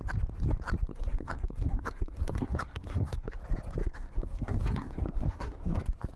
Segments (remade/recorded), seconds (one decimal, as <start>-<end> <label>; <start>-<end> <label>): 0.0-0.9 recorded; 0.9-3.4 remade; 3.4-3.8 recorded; 3.8-5.8 remade; 5.8-6.2 recorded